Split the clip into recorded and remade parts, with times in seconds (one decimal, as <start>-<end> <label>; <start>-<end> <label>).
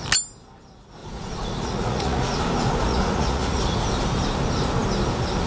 0.0-1.0 recorded; 1.0-2.4 remade; 2.4-2.9 recorded; 2.9-3.6 remade; 3.6-5.5 recorded